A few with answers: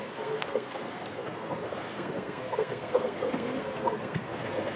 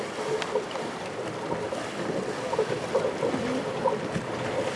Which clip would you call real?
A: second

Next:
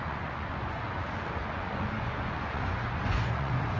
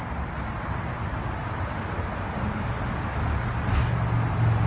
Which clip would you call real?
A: second